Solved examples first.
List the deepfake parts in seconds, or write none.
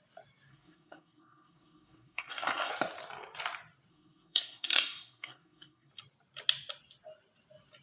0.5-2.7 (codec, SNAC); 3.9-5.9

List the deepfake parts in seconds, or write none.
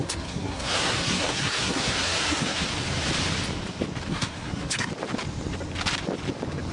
0.0-2.6 (codec, SNAC); 4.1-4.9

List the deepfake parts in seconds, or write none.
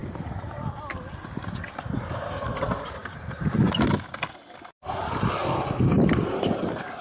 none